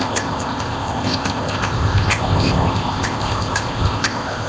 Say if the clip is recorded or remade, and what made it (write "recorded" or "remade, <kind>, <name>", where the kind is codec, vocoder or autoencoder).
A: remade, codec, ZipCodec